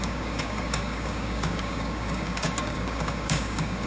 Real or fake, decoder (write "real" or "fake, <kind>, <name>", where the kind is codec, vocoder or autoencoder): fake, codec, DAC